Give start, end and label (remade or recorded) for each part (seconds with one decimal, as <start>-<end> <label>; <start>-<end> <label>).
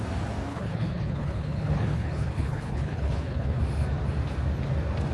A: 0.0-0.5 recorded; 0.5-3.6 remade; 3.6-5.1 recorded